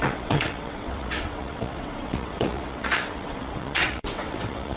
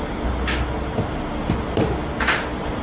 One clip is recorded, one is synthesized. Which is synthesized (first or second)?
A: first